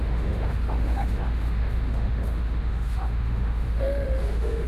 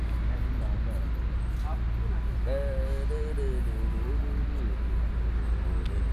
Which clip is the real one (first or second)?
second